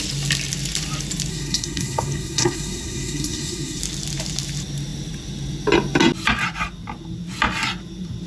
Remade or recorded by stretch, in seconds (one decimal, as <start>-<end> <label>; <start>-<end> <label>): 0.0-1.3 recorded; 1.3-3.8 remade; 3.8-8.3 recorded